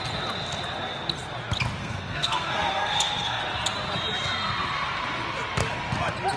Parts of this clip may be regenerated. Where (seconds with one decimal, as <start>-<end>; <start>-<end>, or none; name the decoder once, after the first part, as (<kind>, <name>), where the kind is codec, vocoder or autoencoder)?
1.8-3.4 (codec, SNAC)